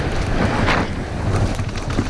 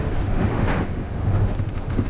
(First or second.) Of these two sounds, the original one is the first